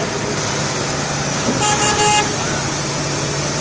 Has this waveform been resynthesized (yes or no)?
no